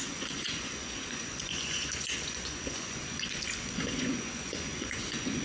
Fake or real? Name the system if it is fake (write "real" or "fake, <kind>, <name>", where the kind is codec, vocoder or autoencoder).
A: fake, vocoder, Vocos